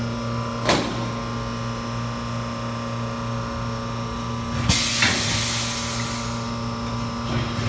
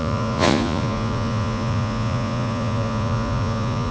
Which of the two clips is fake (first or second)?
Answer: second